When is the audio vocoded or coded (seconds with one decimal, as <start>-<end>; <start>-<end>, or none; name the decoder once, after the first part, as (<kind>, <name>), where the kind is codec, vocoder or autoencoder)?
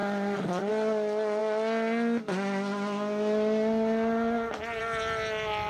none